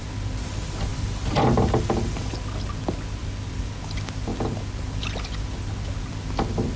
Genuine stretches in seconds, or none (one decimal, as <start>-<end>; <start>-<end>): 0.0-3.2; 3.8-6.8